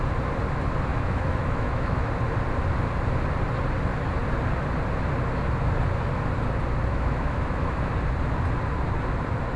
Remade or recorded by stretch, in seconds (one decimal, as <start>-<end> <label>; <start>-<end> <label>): 0.0-0.9 recorded; 0.9-2.1 remade; 2.1-6.9 recorded; 6.9-7.9 remade; 7.9-9.6 recorded